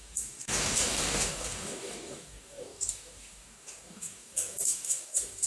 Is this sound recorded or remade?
remade